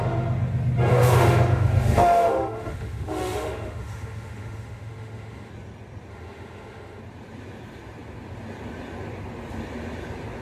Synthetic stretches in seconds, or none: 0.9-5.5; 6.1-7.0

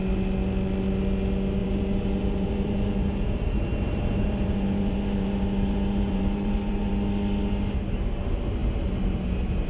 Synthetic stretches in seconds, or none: 1.6-6.9

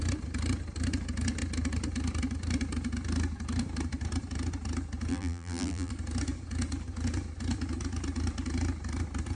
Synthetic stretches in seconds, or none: 5.1-5.9

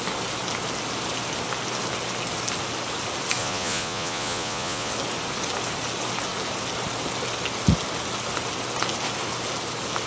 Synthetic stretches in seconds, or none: 3.4-4.9

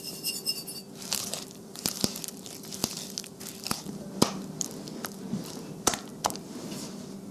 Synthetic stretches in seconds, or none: none

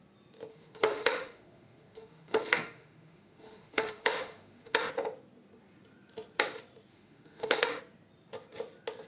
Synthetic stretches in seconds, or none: 0.5-4.9; 6.9-7.8

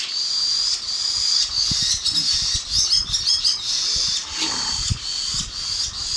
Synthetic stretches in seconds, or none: none

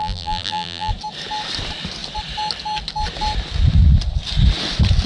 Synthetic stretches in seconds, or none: 0.0-0.9